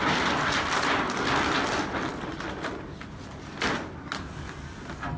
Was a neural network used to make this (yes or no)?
no